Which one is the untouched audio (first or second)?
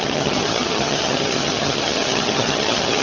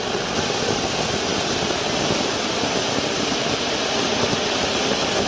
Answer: second